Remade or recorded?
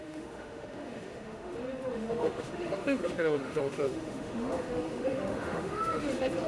remade